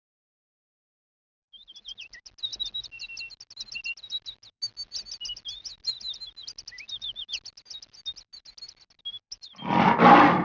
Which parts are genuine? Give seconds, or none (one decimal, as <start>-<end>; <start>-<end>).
0.0-10.4